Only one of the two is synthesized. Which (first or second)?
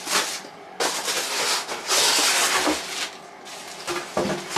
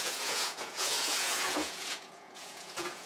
second